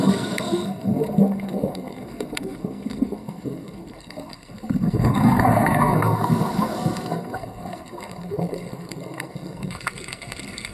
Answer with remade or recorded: remade